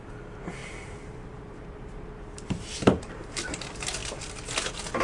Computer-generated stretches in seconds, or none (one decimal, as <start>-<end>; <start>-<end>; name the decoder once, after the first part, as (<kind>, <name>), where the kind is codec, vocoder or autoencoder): 0.6-3.6 (vocoder, BigVGAN v2)